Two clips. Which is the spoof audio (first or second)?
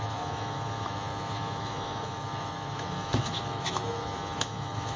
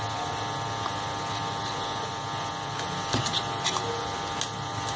first